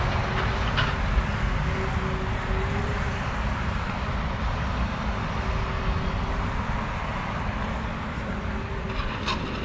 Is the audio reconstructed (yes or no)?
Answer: no